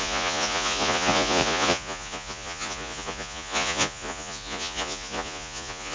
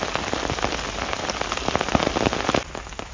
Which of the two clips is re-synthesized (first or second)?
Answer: first